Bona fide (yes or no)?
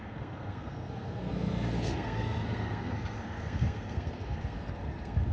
no